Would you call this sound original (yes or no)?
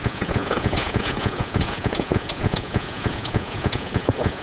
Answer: no